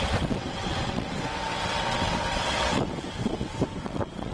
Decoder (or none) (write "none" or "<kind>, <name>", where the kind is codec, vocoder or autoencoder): vocoder, WaveNeXt